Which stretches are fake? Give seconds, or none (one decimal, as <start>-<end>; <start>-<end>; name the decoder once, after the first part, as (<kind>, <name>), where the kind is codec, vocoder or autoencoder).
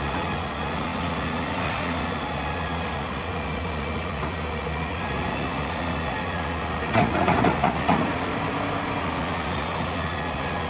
0.0-8.3 (vocoder, Vocos); 9.0-10.7